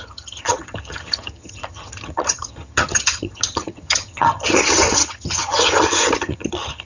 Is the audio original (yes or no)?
no